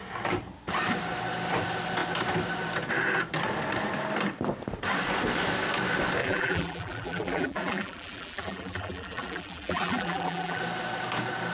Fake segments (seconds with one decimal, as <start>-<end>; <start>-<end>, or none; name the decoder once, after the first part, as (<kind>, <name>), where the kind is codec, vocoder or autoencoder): 6.2-10.6 (vocoder, BigVGAN v2)

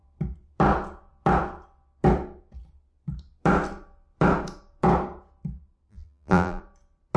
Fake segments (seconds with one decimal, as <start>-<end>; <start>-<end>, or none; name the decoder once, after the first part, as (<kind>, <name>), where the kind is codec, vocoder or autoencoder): 5.9-6.6 (vocoder, BigVGAN v2)

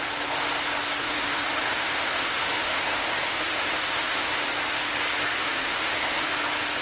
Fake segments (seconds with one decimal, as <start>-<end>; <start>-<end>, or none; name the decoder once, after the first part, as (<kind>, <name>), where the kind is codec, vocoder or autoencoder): 1.0-4.4 (autoencoder, DAC-VAE); 5.3-6.3

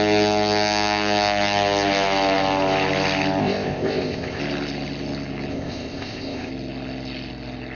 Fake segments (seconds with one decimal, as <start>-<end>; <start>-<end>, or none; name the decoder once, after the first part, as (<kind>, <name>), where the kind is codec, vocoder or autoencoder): 3.4-4.4 (codec, ZipCodec); 5.5-6.5

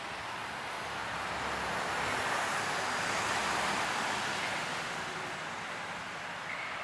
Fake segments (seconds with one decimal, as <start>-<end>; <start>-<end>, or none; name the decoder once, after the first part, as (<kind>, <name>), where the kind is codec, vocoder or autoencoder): none

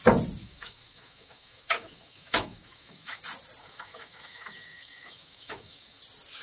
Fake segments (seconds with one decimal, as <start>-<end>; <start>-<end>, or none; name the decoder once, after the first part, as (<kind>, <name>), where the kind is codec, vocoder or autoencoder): 0.4-3.2 (autoencoder, DAC-VAE); 3.6-6.0

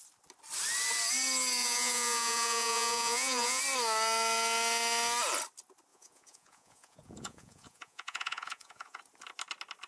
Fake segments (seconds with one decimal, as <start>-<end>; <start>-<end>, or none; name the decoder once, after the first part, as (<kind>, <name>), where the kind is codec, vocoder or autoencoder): 1.6-3.6 (vocoder, Vocos); 5.9-9.0

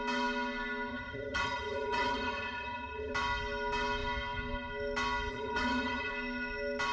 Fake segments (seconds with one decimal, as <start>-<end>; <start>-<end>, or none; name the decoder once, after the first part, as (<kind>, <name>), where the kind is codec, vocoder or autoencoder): 0.9-3.1 (vocoder, HiFi-GAN); 5.3-6.1